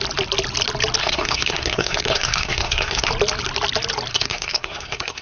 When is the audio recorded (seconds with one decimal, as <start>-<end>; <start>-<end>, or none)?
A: 0.0-1.0; 3.1-4.1